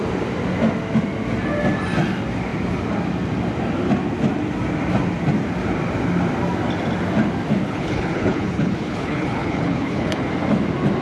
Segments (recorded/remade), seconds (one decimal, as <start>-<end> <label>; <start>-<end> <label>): 0.0-7.6 recorded; 7.6-10.3 remade; 10.3-11.0 recorded